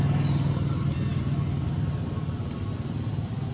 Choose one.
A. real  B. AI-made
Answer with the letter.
A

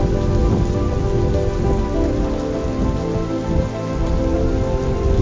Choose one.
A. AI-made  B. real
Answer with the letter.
B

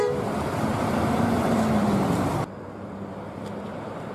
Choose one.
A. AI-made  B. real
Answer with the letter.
A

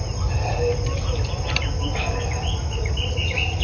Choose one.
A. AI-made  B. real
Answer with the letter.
B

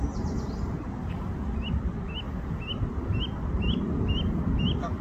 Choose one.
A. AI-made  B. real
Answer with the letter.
B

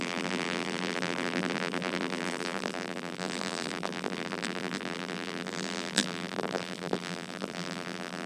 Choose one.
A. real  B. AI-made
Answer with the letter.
B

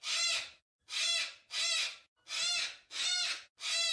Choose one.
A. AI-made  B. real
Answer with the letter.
B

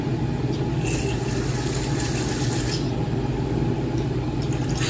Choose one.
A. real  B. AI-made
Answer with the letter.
A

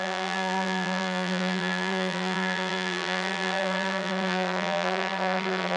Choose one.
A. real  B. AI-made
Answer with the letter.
B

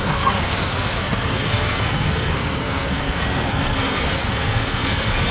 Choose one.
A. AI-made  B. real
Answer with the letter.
A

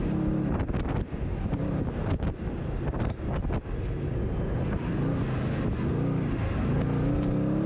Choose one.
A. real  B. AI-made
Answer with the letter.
A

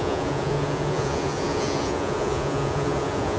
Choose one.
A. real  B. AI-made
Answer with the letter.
B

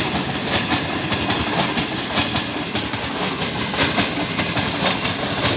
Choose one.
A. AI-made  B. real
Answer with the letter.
B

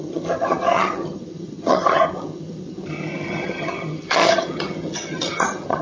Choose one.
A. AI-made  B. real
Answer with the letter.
A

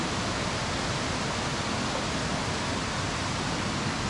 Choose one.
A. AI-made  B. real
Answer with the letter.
B